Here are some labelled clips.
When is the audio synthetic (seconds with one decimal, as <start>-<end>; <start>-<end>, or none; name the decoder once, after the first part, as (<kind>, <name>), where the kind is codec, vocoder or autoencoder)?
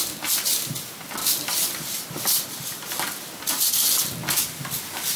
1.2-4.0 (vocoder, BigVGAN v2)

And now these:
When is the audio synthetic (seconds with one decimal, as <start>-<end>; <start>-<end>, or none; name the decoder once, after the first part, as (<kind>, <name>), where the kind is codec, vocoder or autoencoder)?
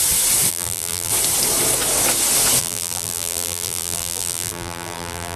0.5-1.1 (vocoder, BigVGAN v2); 2.6-5.4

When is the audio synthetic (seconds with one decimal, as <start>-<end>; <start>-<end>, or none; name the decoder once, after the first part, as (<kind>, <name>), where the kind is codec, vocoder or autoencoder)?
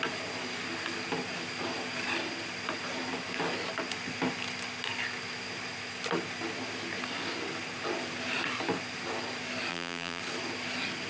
9.7-10.2 (vocoder, BigVGAN v2)